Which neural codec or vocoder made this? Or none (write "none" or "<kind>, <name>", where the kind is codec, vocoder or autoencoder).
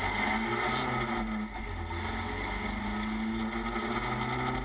none